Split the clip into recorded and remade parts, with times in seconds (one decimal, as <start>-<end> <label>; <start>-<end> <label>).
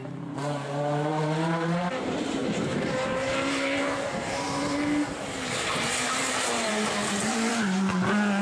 0.0-7.5 remade; 7.5-8.4 recorded